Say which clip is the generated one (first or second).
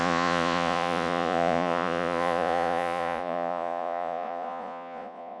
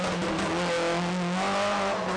first